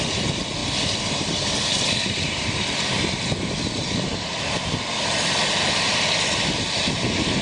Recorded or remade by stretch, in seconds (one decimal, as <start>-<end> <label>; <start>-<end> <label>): 0.0-0.6 recorded; 0.6-3.2 remade; 3.2-7.4 recorded